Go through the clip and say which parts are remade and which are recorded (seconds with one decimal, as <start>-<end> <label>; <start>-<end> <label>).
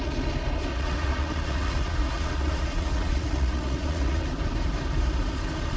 0.0-0.7 recorded; 0.7-4.2 remade; 4.2-5.8 recorded